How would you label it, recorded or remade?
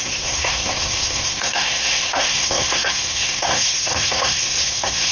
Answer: remade